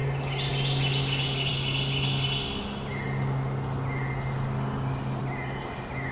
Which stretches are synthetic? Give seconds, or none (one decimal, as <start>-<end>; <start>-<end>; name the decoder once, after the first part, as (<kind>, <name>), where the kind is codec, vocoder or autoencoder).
none